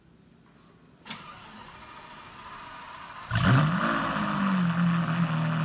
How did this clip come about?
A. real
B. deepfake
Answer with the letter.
A